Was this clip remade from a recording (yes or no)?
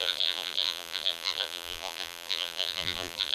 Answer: yes